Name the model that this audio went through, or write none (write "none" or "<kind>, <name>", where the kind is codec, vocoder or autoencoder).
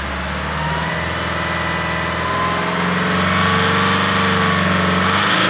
none